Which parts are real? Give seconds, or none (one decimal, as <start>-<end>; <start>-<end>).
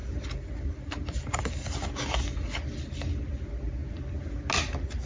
1.9-5.1